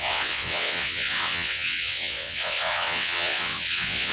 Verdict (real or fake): fake